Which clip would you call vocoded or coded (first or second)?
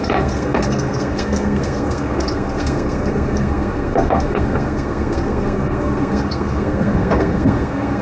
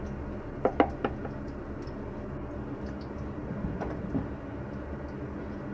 first